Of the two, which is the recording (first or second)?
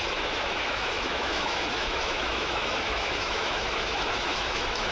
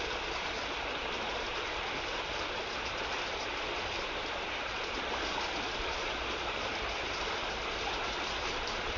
second